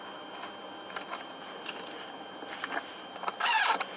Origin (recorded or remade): recorded